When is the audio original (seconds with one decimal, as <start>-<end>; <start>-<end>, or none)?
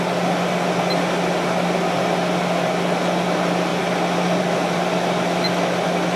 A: 0.0-6.2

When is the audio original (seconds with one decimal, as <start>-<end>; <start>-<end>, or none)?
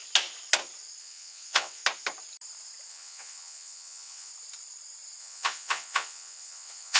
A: 0.0-1.0; 1.8-2.9; 4.3-5.2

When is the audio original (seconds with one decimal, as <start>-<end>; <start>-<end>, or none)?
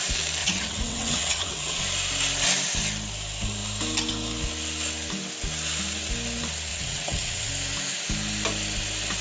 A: 0.0-0.4; 1.8-6.7; 7.5-9.2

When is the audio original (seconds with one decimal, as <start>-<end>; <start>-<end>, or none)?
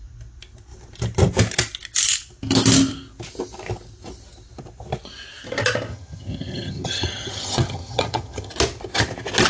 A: 0.0-5.9; 8.5-9.5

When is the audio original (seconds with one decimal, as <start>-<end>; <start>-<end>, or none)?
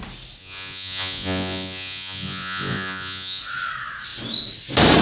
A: 0.0-0.4; 3.4-5.0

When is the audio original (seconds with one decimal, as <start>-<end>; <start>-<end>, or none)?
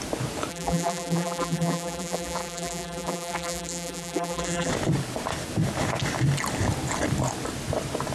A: 0.0-0.5; 4.7-8.1